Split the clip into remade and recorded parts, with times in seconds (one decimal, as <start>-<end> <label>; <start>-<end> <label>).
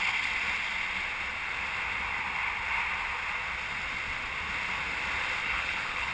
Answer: 0.0-5.4 recorded; 5.4-6.1 remade